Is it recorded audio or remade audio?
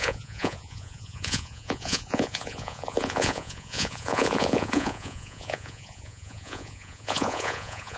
remade